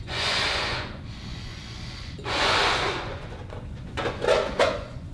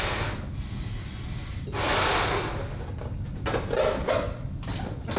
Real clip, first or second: second